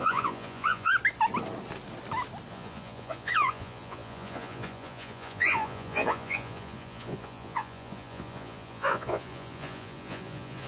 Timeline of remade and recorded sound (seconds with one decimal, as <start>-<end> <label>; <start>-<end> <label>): 0.0-0.9 remade; 0.9-2.5 recorded; 2.5-10.7 remade